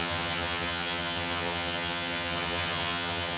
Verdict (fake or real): fake